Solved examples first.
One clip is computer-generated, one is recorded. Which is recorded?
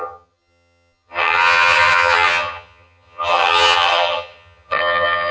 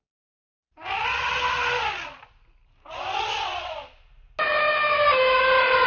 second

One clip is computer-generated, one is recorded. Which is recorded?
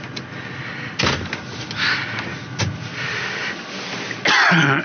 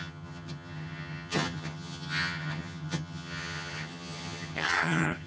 first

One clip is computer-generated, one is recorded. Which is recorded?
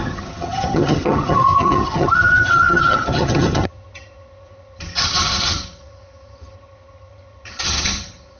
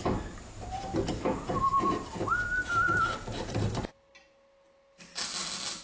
second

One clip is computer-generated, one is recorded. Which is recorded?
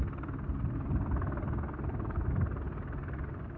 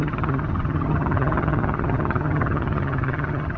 first